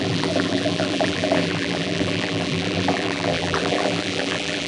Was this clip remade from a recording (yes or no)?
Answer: yes